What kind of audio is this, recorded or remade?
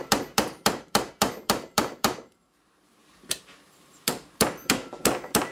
remade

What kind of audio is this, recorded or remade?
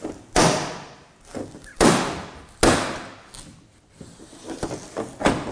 recorded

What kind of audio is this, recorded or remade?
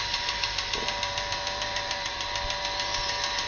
remade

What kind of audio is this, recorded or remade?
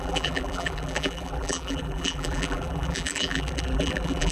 remade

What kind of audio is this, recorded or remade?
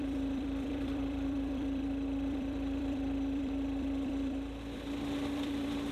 remade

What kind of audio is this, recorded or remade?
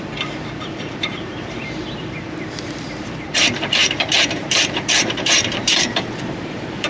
remade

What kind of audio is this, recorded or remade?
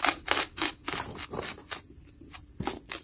recorded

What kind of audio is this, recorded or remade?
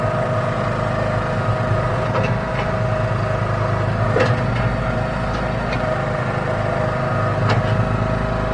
recorded